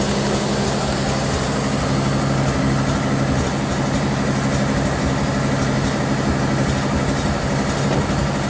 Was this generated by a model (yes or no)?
no